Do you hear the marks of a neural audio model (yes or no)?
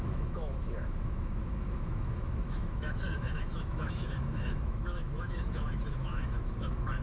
yes